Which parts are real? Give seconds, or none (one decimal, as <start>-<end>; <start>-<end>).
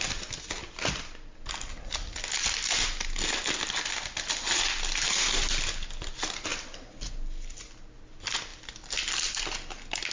0.0-8.5; 9.4-10.1